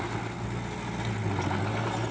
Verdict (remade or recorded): recorded